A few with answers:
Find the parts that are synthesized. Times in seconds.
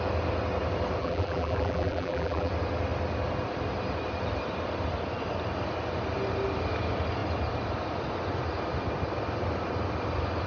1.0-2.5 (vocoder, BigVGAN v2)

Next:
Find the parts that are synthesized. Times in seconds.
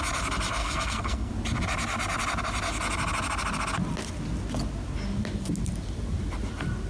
0.6-1.3 (codec, SNAC)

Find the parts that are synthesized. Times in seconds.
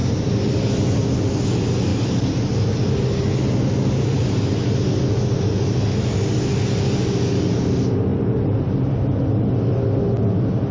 0.0-1.0 (vocoder, BigVGAN v2); 1.9-2.9; 8.1-8.9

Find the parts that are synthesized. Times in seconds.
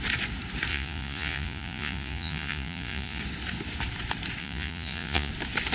0.7-3.2 (vocoder, Vocos); 4.4-5.3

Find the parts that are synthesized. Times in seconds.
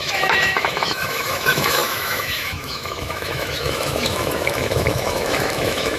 0.0-6.0 (autoencoder, DAC-VAE)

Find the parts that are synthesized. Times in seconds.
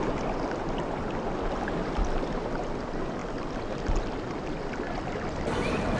none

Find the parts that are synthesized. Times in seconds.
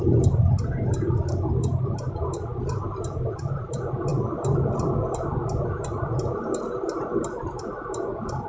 none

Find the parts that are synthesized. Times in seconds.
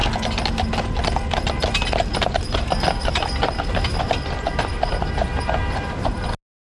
4.9-5.5 (vocoder, BigVGAN v2)